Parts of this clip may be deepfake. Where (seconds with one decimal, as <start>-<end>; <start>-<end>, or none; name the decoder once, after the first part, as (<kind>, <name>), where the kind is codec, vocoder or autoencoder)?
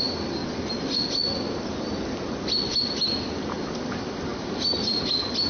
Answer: none